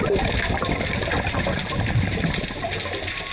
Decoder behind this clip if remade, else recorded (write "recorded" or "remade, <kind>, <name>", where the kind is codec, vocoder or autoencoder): recorded